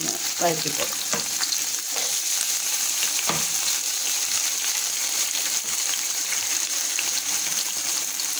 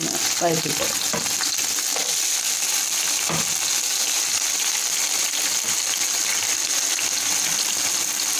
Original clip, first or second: second